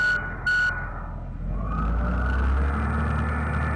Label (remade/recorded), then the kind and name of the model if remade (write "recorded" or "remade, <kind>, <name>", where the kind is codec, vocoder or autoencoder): recorded